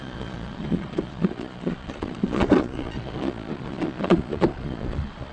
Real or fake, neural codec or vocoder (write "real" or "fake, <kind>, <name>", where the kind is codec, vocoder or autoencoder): fake, vocoder, Vocos